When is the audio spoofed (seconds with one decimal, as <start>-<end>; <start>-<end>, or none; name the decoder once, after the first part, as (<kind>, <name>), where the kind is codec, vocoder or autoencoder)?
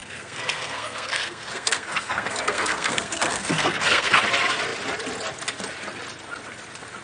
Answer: 0.0-4.2 (codec, SNAC)